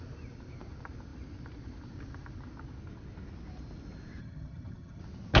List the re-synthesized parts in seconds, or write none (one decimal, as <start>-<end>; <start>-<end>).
4.2-5.0